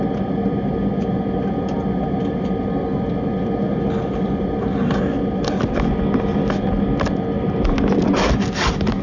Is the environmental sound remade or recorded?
recorded